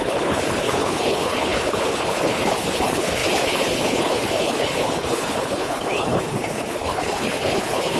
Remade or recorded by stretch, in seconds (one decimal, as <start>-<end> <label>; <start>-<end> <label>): 0.0-8.0 remade